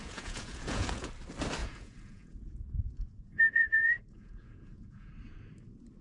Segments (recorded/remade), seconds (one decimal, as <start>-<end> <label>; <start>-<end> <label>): 0.0-1.1 remade; 1.1-1.6 recorded; 1.6-5.1 remade; 5.1-6.0 recorded